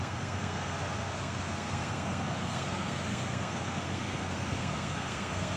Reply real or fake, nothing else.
fake